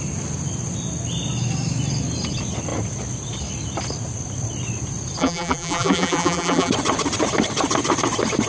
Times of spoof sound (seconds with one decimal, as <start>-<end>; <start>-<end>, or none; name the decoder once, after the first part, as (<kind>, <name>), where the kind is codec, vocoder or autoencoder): 5.2-6.7 (vocoder, BigVGAN v2)